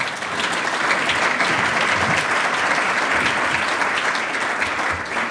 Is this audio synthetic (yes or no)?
no